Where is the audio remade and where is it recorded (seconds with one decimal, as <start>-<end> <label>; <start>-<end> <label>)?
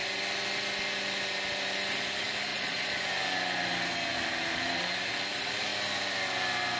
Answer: 0.0-2.5 recorded; 2.5-3.1 remade; 3.1-6.8 recorded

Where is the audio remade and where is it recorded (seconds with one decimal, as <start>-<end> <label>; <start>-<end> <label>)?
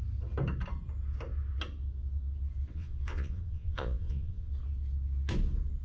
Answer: 0.0-2.7 recorded; 2.7-4.5 remade; 4.5-5.8 recorded